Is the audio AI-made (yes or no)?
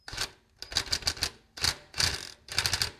no